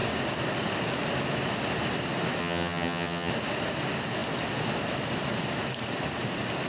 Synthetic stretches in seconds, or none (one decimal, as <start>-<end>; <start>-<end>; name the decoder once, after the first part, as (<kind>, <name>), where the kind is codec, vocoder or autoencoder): 2.4-3.3 (vocoder, HiFi-GAN)